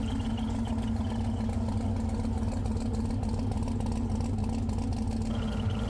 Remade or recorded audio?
recorded